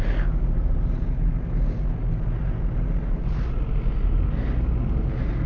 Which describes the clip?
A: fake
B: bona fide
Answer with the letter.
B